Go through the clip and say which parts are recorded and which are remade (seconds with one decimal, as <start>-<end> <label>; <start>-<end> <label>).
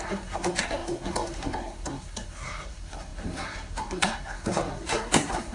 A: 0.0-5.5 remade